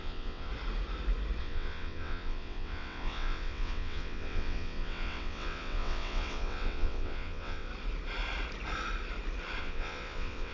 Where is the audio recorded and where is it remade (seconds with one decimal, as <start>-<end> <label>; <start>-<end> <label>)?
0.0-0.5 remade; 0.5-1.4 recorded; 1.4-7.7 remade; 7.7-9.6 recorded; 9.6-10.5 remade

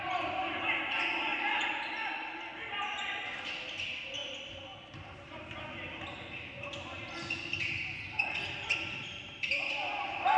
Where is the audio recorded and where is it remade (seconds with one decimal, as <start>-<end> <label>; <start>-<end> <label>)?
0.0-10.4 recorded

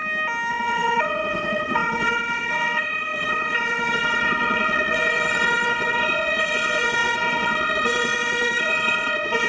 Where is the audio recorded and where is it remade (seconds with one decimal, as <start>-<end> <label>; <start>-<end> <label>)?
0.0-0.5 recorded; 0.5-9.5 remade

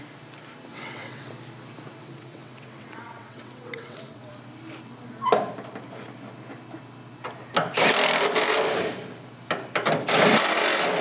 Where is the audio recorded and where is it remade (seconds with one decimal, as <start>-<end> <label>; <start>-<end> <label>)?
0.0-0.7 recorded; 0.7-1.3 remade; 1.3-1.9 recorded; 1.9-4.3 remade; 4.3-11.0 recorded

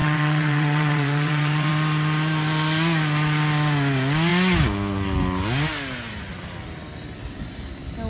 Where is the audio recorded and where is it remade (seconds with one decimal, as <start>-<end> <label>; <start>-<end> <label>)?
0.0-1.7 remade; 1.7-8.1 recorded

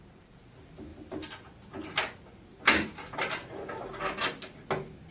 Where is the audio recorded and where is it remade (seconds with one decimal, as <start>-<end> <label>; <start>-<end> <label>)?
0.0-5.1 recorded